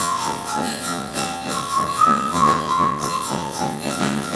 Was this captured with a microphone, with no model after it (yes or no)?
no